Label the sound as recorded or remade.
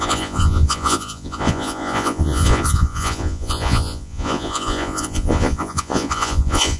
remade